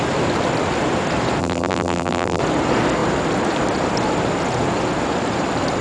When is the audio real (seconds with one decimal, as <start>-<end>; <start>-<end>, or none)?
0.0-1.4; 2.4-5.8